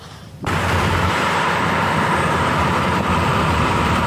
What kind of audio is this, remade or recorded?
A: remade